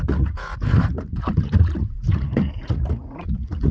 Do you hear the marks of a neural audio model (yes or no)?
yes